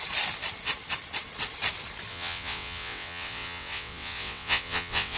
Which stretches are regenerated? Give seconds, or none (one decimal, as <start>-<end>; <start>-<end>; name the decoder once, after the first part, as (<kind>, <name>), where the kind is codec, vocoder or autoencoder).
2.1-5.2 (vocoder, WaveNeXt)

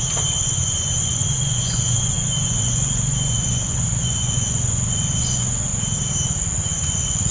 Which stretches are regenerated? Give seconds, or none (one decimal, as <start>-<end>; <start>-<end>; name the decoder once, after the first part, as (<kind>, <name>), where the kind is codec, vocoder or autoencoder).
0.0-5.7 (vocoder, Vocos); 6.6-7.3

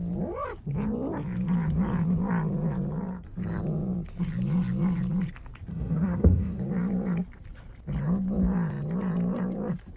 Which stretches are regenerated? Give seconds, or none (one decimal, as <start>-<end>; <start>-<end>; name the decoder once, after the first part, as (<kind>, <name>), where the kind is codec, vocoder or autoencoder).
5.7-6.6 (codec, SNAC)

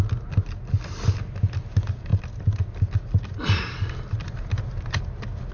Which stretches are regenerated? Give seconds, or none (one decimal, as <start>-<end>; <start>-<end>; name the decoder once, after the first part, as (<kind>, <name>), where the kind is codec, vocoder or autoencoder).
none

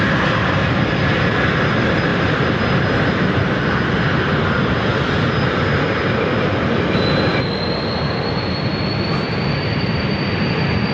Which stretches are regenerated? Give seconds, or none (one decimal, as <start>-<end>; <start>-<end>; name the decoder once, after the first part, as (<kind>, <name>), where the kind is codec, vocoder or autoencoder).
none

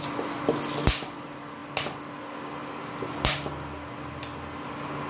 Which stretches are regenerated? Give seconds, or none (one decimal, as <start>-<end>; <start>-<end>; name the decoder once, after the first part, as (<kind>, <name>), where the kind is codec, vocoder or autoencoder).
none

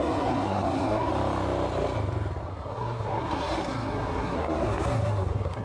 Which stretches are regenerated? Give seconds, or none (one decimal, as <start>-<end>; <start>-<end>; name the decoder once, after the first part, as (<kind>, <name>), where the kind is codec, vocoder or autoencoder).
0.0-1.1 (codec, SNAC); 2.5-5.6